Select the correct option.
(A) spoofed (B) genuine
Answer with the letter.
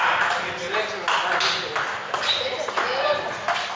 B